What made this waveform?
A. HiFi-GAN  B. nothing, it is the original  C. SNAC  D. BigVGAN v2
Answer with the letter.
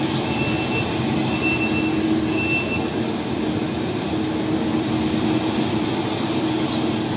B